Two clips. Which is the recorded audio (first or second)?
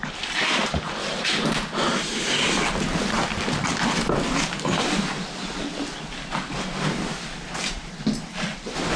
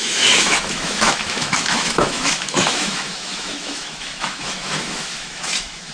first